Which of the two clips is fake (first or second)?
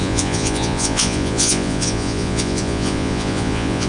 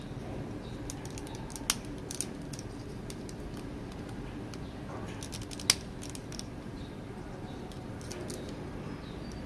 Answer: first